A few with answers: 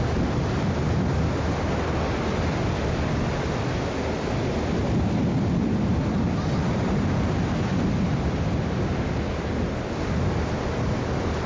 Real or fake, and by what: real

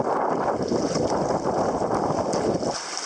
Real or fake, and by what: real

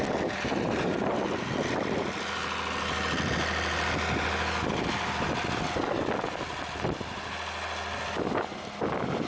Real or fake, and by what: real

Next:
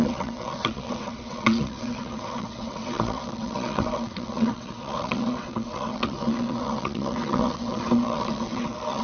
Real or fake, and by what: fake, vocoder, WaveNeXt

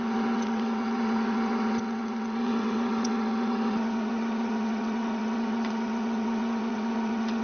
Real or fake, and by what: fake, vocoder, WaveNeXt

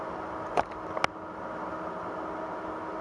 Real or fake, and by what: real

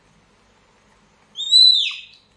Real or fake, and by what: real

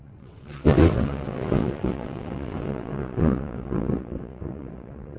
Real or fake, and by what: fake, vocoder, WaveNeXt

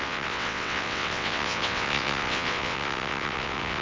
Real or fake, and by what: fake, vocoder, WaveNeXt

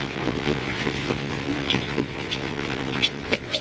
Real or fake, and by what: fake, vocoder, WaveNeXt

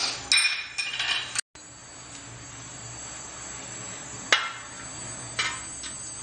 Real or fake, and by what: real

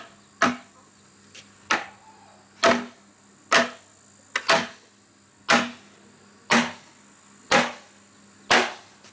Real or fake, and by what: real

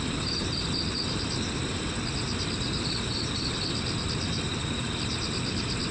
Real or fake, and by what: real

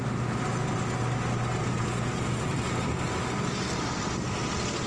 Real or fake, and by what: real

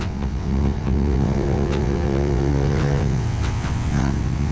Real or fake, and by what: fake, vocoder, WaveNeXt